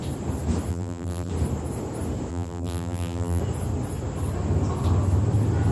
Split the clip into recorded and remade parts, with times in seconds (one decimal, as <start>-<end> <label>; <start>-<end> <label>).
0.0-0.7 recorded; 0.7-1.3 remade; 1.3-2.3 recorded; 2.3-3.4 remade; 3.4-5.7 recorded